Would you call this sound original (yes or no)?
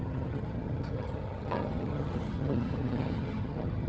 no